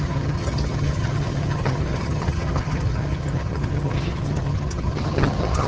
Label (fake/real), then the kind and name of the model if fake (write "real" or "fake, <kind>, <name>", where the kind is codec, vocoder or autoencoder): fake, vocoder, HiFi-GAN